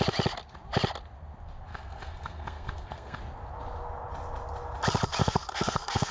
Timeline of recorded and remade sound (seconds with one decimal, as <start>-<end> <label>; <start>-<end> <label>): 0.0-1.7 recorded; 1.7-3.2 remade; 3.2-5.2 recorded; 5.2-6.1 remade

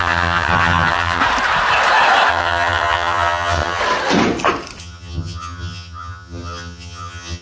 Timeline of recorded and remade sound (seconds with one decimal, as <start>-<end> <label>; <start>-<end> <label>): 0.0-1.2 remade; 1.2-2.3 recorded; 2.3-3.8 remade; 3.8-4.8 recorded; 4.8-7.4 remade

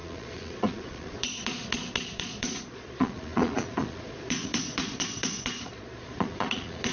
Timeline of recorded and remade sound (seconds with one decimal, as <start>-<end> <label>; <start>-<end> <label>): 0.0-6.9 remade

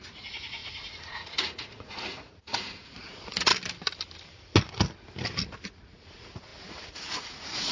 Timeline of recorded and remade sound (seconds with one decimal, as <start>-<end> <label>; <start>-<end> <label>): 0.0-3.5 remade; 3.5-5.7 recorded; 5.7-7.7 remade

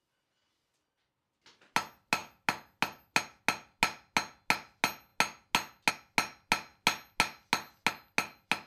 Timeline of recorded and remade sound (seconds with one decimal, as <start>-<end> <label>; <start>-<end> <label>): 0.0-8.7 recorded

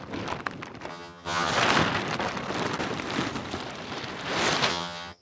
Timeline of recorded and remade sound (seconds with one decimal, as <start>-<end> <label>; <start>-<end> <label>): 0.0-0.9 recorded; 0.9-1.5 remade; 1.5-4.7 recorded; 4.7-5.2 remade

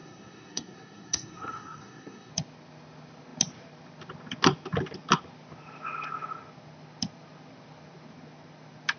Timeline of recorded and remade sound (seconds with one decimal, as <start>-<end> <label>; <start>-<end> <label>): 0.0-2.3 remade; 2.3-9.0 recorded

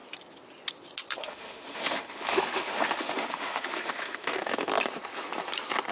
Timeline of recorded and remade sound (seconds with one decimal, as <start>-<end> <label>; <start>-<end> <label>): 0.0-1.2 recorded; 1.2-4.7 remade; 4.7-5.9 recorded